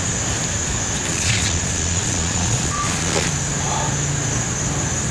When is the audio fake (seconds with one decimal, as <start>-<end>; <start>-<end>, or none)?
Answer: 1.1-3.3